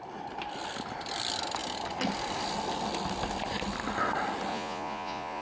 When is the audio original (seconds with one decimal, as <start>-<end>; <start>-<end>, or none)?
0.0-4.5